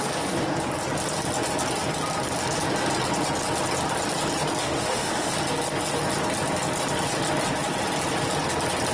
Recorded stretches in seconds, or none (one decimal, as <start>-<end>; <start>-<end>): 0.0-4.6; 5.3-8.9